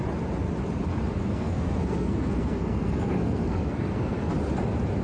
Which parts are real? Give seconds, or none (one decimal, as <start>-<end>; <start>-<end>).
0.0-1.3; 4.3-5.0